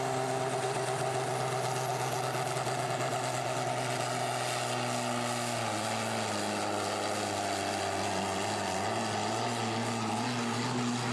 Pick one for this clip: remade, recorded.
recorded